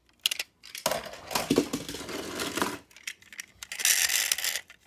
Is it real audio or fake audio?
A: real